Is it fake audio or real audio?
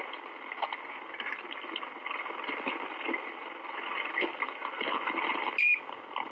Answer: real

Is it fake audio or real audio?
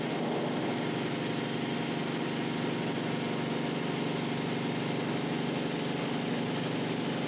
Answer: real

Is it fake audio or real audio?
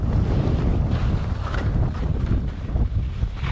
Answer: real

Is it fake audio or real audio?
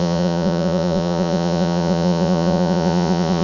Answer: fake